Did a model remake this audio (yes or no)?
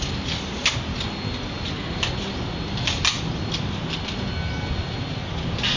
no